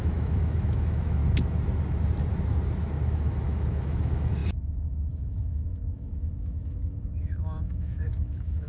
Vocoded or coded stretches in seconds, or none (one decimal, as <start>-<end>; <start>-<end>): 0.0-1.2; 3.1-8.7